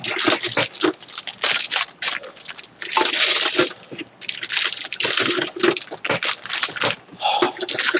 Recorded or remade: recorded